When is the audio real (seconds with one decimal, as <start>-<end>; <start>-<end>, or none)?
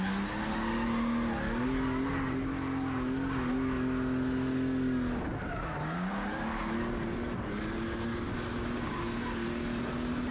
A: 0.0-8.1; 9.2-10.3